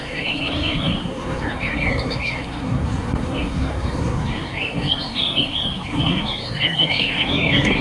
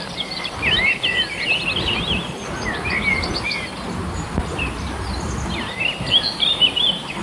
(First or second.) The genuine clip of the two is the second